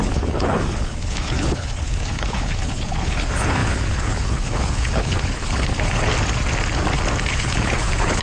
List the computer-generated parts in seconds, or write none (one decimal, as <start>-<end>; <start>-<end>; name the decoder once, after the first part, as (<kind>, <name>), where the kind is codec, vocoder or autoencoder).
0.0-6.1 (codec, HILCodec); 7.3-8.2